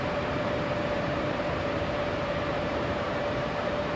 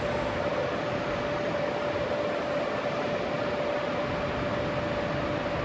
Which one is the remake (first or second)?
first